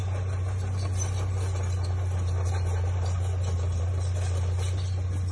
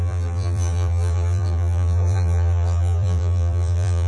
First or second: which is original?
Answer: first